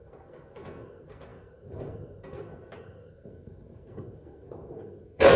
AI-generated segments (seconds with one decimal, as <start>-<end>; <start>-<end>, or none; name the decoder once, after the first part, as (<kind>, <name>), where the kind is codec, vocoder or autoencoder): 0.0-5.4 (codec, SNAC)